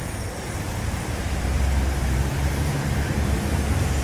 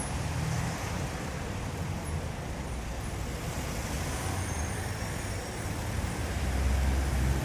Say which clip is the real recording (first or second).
second